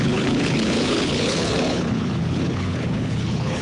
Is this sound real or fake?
fake